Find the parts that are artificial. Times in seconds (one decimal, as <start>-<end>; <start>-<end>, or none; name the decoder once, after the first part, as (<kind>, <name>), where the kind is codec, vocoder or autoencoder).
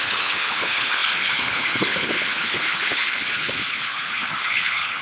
0.0-5.0 (codec, HILCodec)